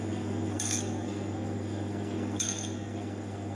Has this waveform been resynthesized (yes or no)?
yes